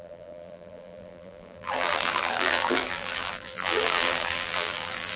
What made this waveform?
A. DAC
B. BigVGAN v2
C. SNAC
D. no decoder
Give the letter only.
B